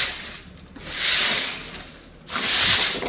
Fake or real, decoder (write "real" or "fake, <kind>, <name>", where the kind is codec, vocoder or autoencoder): real